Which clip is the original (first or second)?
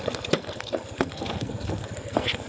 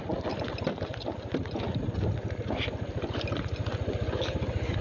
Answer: second